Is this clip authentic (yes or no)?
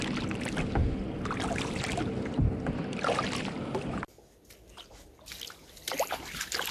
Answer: yes